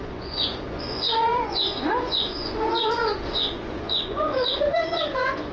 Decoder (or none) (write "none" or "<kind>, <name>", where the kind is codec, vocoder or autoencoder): vocoder, Vocos